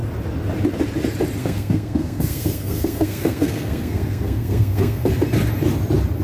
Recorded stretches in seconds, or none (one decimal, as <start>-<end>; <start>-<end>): 0.0-1.4; 5.1-6.2